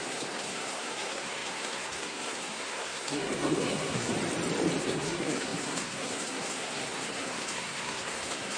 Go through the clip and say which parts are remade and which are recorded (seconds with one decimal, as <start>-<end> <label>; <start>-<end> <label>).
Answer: 0.0-4.1 remade; 4.1-4.8 recorded; 4.8-8.6 remade